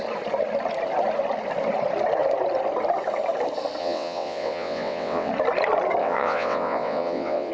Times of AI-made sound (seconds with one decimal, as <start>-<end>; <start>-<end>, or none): 3.8-5.3; 6.0-7.5